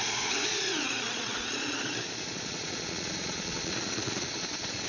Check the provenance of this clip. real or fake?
fake